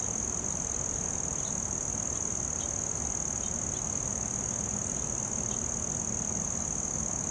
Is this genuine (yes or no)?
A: yes